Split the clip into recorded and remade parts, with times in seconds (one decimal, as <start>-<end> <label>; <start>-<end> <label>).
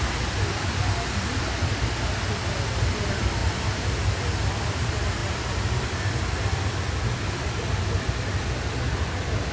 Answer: 0.0-9.5 recorded